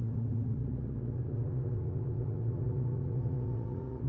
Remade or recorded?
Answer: remade